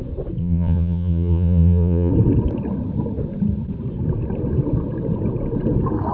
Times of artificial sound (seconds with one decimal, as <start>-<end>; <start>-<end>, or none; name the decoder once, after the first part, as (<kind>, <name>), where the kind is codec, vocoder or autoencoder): 0.4-2.1 (vocoder, Vocos)